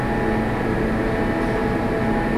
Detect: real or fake real